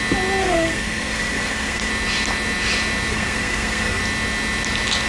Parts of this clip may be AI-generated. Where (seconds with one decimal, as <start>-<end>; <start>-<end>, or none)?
0.4-1.9; 3.1-4.0